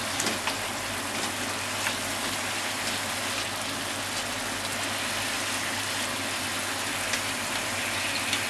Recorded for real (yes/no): yes